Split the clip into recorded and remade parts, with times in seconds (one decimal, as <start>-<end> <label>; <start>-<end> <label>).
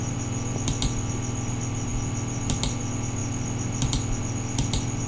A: 0.0-5.1 recorded